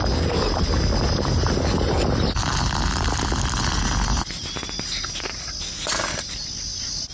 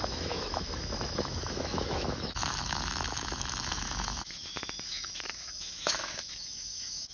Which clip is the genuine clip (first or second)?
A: first